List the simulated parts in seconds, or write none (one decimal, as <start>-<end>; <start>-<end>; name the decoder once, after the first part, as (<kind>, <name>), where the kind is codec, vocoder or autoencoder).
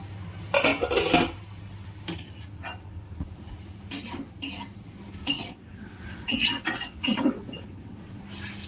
5.2-8.2 (vocoder, WaveNeXt)